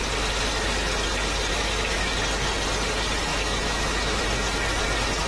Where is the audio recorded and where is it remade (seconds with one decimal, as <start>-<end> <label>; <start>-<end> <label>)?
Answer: 0.0-1.5 recorded; 1.5-2.1 remade; 2.1-3.3 recorded; 3.3-4.2 remade; 4.2-5.3 recorded